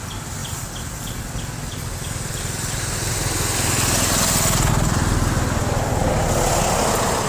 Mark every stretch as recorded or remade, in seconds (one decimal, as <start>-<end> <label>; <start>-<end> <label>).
0.0-7.3 recorded